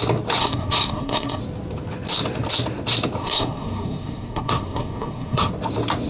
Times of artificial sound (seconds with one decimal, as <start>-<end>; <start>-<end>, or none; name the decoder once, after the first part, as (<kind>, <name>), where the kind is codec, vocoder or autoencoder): 0.4-1.4 (codec, SNAC); 3.2-5.5